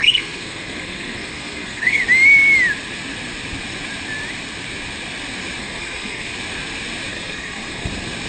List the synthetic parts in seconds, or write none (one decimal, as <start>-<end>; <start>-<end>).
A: 0.0-2.0; 5.6-6.3; 7.1-7.9